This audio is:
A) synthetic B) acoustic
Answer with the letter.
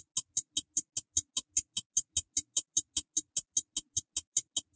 B